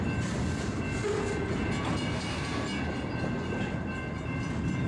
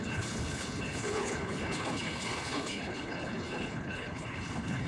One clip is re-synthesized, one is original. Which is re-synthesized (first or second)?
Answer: second